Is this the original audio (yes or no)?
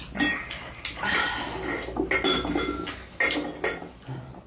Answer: yes